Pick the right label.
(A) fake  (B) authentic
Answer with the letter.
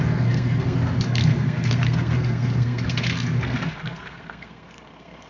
A